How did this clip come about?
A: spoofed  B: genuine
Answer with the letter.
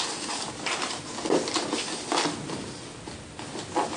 B